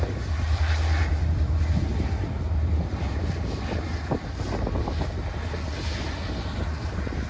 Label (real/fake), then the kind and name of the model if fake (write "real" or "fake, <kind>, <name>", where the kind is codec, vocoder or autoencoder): real